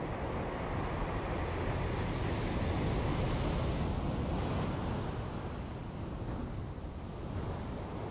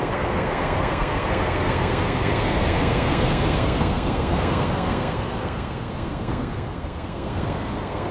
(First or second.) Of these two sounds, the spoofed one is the second